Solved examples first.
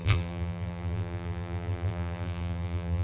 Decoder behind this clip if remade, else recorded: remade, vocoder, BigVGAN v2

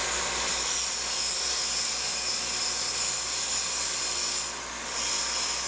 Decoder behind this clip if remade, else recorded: recorded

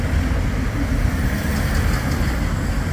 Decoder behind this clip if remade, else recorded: recorded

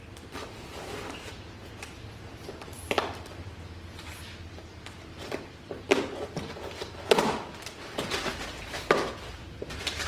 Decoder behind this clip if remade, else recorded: remade, vocoder, BigVGAN v2